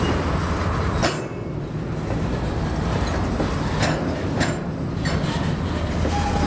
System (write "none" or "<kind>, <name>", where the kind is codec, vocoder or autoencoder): none